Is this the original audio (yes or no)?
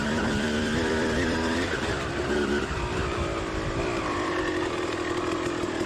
no